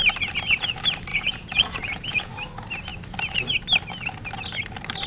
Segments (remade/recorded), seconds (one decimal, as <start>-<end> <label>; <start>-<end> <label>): 0.0-1.1 recorded; 1.1-2.3 remade; 2.3-5.1 recorded